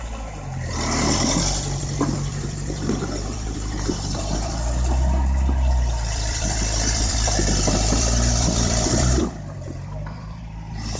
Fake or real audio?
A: fake